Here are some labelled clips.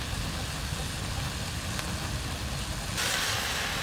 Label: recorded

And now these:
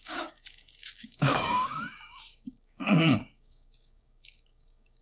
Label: remade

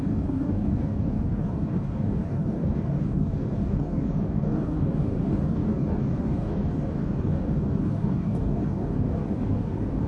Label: remade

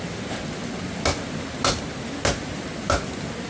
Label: recorded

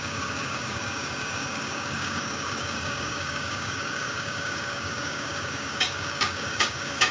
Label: remade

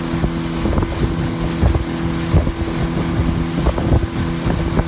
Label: recorded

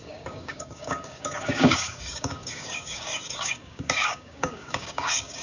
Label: remade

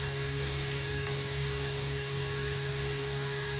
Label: remade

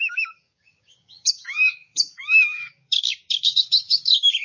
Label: remade